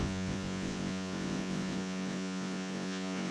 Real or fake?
fake